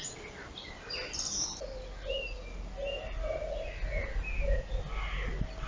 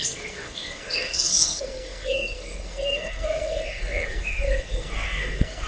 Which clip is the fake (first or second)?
second